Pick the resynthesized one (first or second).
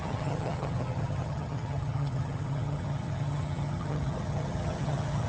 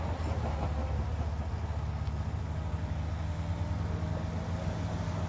first